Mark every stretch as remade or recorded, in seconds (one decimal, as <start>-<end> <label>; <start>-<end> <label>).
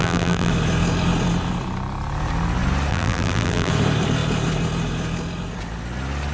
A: 0.0-0.5 remade; 0.5-2.9 recorded; 2.9-3.7 remade; 3.7-6.3 recorded